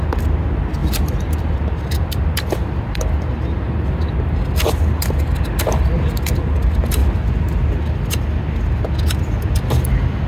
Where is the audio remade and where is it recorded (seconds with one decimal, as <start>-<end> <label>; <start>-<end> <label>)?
0.0-10.3 recorded